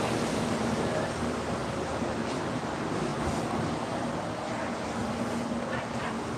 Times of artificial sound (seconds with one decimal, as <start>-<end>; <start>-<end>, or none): 1.6-2.2